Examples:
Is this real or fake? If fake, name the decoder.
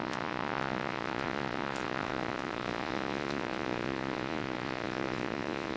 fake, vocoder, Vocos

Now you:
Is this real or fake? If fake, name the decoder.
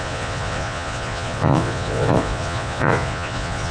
fake, vocoder, Vocos